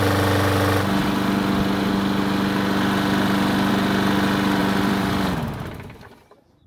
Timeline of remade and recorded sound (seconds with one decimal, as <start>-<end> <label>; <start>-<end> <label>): 0.0-4.6 recorded; 4.6-5.1 remade; 5.1-6.7 recorded